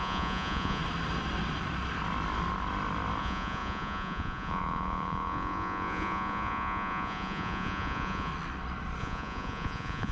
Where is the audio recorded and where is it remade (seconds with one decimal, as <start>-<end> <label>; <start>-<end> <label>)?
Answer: 0.0-0.8 remade; 0.8-3.2 recorded; 3.2-8.3 remade; 8.3-9.0 recorded; 9.0-10.1 remade

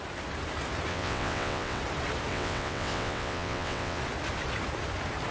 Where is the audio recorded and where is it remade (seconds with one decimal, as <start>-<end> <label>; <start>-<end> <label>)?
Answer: 0.0-0.9 recorded; 0.9-1.8 remade; 1.8-2.3 recorded; 2.3-4.0 remade; 4.0-5.3 recorded

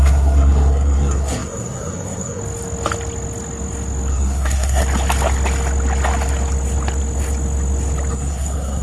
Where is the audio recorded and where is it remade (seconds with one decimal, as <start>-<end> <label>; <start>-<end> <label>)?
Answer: 0.0-2.4 remade; 2.4-4.1 recorded; 4.1-4.8 remade; 4.8-8.1 recorded; 8.1-8.8 remade

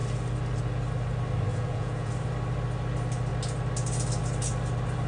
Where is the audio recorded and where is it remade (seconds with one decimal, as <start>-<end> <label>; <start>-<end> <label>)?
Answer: 0.0-1.5 recorded; 1.5-2.1 remade; 2.1-5.1 recorded

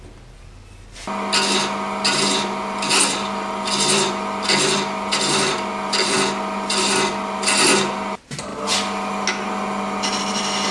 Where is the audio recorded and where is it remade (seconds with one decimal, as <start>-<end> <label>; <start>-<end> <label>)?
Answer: 0.0-10.7 recorded

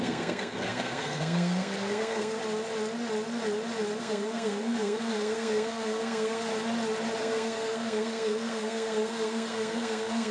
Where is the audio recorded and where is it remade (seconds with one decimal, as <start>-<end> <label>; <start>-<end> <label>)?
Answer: 0.0-2.4 remade; 2.4-4.0 recorded; 4.0-6.5 remade; 6.5-7.2 recorded; 7.2-10.3 remade

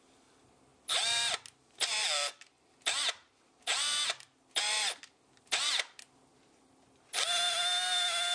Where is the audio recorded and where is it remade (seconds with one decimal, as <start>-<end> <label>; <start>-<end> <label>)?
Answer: 0.0-8.3 recorded